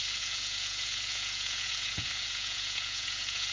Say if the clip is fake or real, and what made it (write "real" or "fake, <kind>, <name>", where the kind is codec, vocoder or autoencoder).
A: fake, vocoder, Vocos